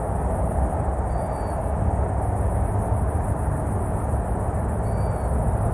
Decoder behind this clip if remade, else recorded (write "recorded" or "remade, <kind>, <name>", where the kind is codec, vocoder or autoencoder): recorded